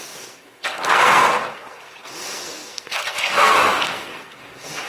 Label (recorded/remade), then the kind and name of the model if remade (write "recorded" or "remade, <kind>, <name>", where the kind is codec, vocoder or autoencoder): remade, codec, SNAC